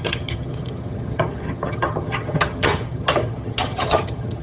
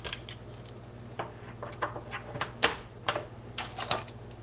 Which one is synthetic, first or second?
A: first